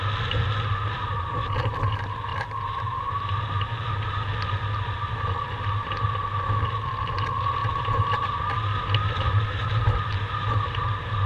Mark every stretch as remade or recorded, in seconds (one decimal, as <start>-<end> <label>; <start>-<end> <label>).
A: 0.0-2.3 recorded; 2.3-3.4 remade; 3.4-7.6 recorded; 7.6-11.3 remade